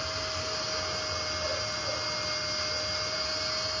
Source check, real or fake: real